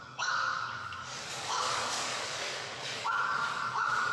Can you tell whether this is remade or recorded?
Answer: remade